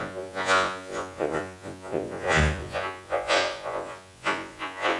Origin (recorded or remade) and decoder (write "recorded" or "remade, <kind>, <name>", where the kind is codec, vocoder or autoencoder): remade, vocoder, Vocos